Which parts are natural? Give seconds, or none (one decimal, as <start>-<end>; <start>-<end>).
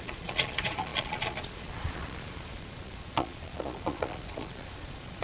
none